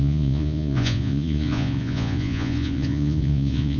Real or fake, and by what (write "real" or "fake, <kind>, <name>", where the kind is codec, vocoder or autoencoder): fake, vocoder, Vocos